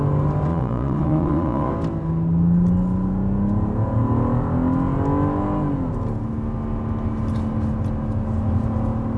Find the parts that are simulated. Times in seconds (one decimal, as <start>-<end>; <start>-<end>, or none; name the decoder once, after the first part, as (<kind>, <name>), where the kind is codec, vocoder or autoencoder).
0.5-1.7 (vocoder, Vocos)